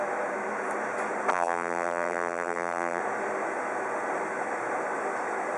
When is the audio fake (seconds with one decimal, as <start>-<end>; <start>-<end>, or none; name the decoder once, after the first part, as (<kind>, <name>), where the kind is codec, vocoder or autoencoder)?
1.3-3.0 (vocoder, BigVGAN v2)